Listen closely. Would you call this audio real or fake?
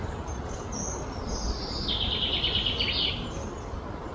real